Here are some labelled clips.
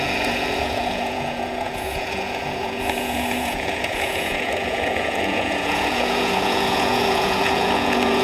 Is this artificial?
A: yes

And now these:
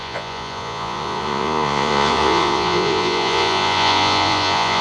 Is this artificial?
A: yes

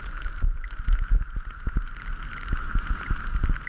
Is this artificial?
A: no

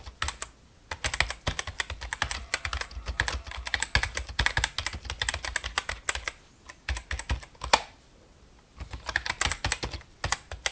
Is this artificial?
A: no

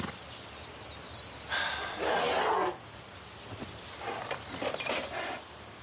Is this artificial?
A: no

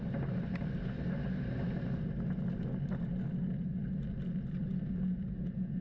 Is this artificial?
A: no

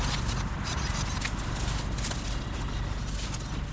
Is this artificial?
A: no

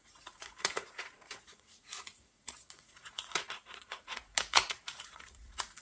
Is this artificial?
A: yes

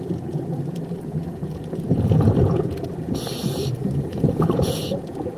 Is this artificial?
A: yes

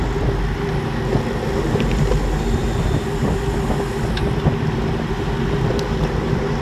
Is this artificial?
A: no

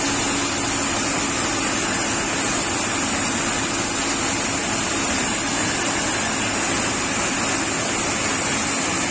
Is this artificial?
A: no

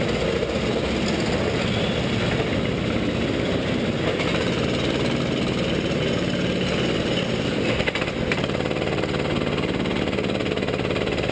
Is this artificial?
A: no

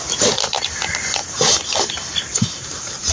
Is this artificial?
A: no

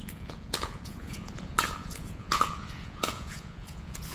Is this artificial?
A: yes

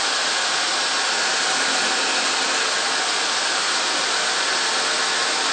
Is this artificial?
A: no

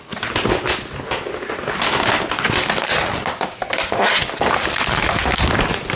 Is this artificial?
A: no